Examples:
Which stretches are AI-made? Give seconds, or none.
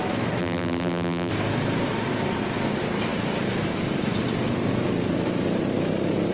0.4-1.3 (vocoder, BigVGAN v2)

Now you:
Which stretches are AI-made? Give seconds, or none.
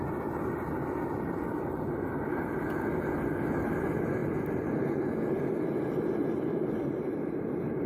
none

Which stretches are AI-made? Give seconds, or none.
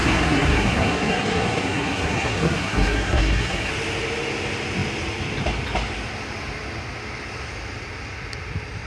0.0-3.7 (codec, SNAC)